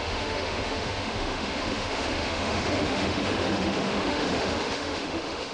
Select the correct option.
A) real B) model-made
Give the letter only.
B